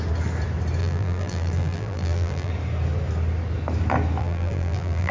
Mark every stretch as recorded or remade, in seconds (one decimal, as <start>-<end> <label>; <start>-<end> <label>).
0.0-0.8 recorded; 0.8-2.5 remade; 2.5-4.2 recorded; 4.2-5.1 remade